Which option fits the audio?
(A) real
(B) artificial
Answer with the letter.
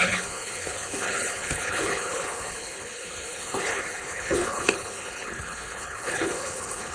B